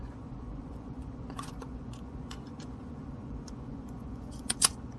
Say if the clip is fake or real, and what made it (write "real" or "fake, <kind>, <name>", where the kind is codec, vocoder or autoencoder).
fake, vocoder, Vocos